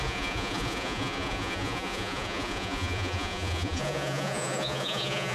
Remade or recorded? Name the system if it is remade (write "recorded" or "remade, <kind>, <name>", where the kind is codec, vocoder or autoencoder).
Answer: remade, vocoder, Vocos